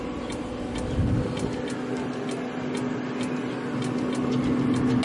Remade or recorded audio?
recorded